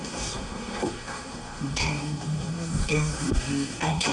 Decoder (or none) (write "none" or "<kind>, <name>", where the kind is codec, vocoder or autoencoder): codec, SNAC